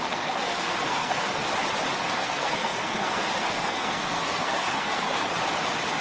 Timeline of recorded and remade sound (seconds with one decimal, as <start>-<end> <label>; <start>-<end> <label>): 0.0-1.4 remade; 1.4-2.0 recorded; 2.0-5.3 remade; 5.3-6.0 recorded

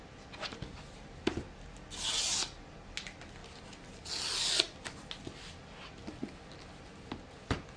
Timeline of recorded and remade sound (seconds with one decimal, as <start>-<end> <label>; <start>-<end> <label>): 0.0-7.8 recorded

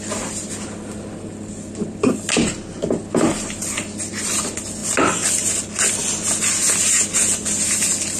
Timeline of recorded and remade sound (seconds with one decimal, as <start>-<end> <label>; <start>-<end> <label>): 0.0-8.2 recorded

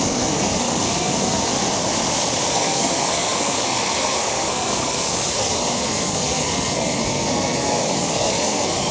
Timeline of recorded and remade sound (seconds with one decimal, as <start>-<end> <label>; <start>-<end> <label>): 0.0-1.5 remade; 1.5-2.5 recorded; 2.5-8.9 remade

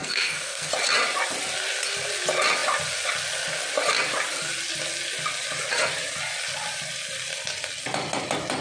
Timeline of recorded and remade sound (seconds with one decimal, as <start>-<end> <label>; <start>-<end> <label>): 0.0-0.7 remade; 0.7-8.6 recorded